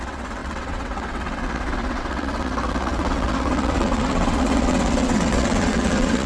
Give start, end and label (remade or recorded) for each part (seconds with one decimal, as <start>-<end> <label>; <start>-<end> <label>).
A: 0.0-6.3 remade